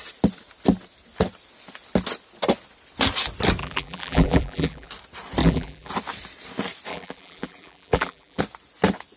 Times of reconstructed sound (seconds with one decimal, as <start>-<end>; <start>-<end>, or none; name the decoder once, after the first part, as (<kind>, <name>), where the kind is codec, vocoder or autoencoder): 3.6-4.9 (vocoder, BigVGAN v2); 5.4-5.9; 6.9-8.4